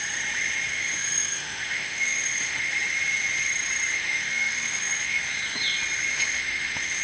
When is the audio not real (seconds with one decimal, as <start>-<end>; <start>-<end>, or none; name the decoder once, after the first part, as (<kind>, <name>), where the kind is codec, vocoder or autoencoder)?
0.7-2.7 (autoencoder, DAC-VAE); 3.9-5.2; 6.1-7.0